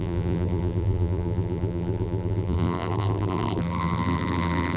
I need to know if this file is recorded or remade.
remade